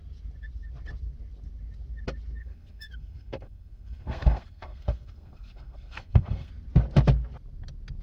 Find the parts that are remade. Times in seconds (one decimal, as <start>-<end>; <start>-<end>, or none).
2.4-6.5